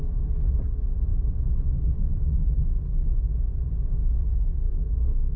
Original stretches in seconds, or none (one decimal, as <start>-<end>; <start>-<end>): 0.0-4.0